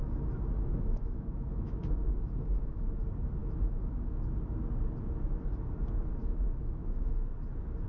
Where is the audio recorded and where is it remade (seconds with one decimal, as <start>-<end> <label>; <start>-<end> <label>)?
0.0-2.8 remade; 2.8-3.4 recorded; 3.4-4.2 remade; 4.2-6.2 recorded; 6.2-7.2 remade; 7.2-7.9 recorded